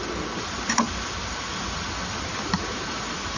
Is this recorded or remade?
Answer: remade